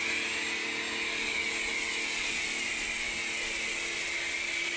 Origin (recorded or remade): recorded